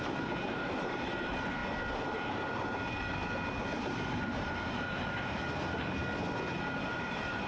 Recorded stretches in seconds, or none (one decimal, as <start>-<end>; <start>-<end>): 1.6-4.2; 6.0-6.6